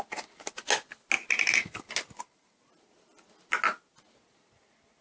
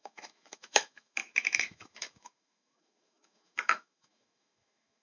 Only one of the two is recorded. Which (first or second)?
first